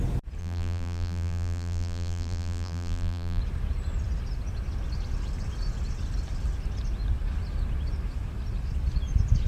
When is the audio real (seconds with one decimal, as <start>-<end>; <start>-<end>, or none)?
0.0-0.4; 3.4-9.5